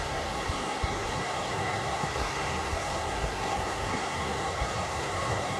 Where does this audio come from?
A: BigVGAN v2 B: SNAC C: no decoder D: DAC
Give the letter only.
B